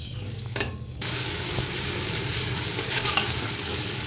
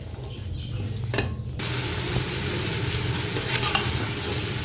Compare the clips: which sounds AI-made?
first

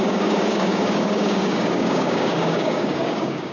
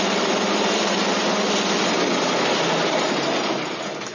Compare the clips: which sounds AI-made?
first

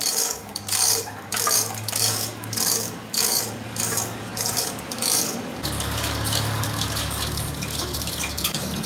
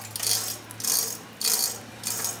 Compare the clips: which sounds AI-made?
first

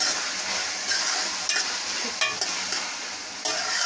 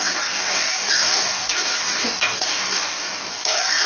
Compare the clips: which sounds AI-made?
second